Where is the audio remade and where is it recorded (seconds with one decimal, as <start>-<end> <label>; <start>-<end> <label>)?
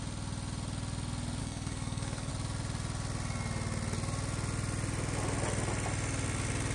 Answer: 0.0-1.4 recorded; 1.4-2.3 remade; 2.3-6.7 recorded